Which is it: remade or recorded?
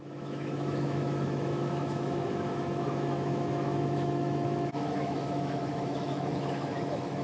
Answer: remade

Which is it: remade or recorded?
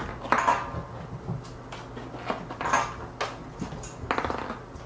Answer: recorded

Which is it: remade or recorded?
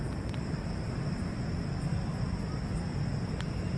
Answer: recorded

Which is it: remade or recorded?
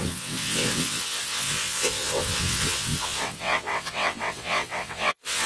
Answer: remade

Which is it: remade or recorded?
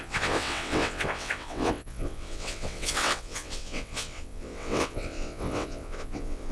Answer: remade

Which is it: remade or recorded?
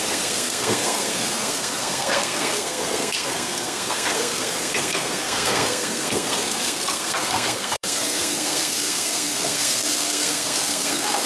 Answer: remade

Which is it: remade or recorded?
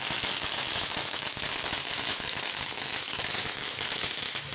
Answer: remade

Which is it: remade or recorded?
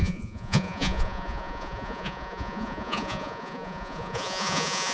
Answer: remade